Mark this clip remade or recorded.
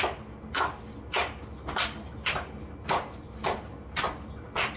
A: recorded